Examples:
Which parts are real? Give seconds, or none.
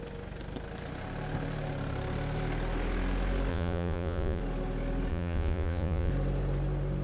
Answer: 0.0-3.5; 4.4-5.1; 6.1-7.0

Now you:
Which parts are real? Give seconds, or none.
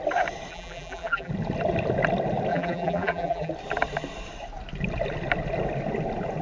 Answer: 0.0-0.5; 1.3-2.5; 3.5-6.4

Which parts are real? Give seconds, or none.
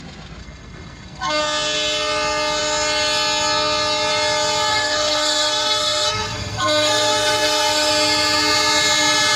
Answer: 0.0-0.4; 1.4-4.7; 7.9-9.4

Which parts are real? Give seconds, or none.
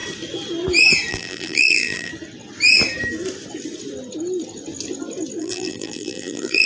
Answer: 0.0-1.1; 2.1-5.4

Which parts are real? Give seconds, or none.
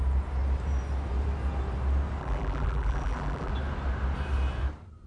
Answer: 0.0-2.2; 3.5-5.1